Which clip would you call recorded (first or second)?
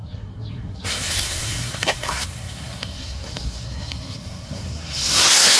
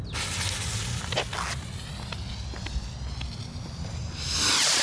second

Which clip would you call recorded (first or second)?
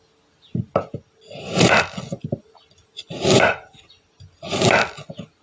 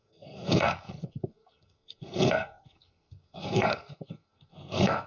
first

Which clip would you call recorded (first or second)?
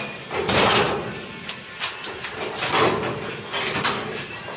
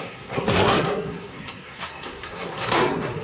first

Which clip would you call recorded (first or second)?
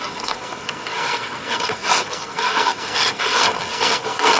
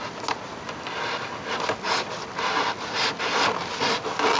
second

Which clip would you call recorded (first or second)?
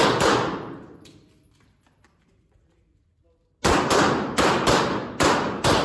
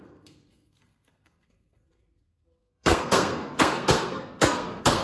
first